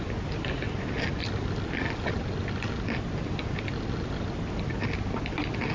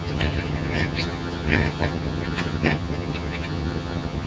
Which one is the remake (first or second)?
second